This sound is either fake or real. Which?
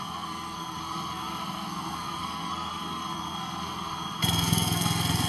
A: fake